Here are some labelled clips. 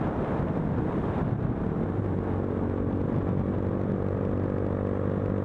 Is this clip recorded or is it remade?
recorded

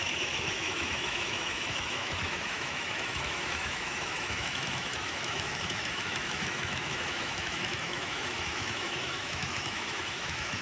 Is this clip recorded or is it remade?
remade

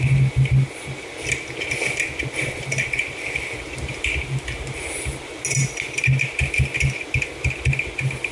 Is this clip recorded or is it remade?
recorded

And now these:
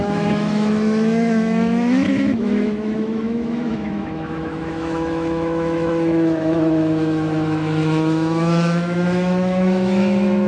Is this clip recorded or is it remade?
remade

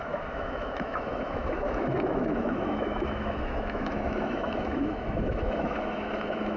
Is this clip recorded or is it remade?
remade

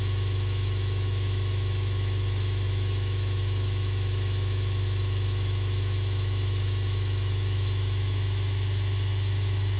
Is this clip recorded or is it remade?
remade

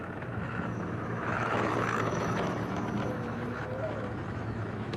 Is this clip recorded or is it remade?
remade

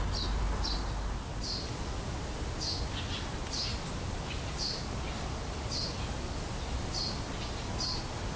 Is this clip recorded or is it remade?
recorded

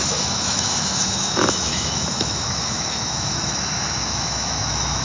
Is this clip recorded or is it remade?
remade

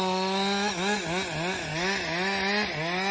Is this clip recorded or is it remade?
recorded